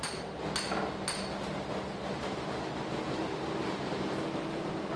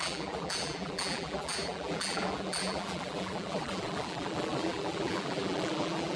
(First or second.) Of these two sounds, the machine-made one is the second